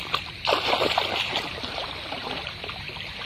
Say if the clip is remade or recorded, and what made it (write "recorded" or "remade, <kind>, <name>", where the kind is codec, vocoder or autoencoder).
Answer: recorded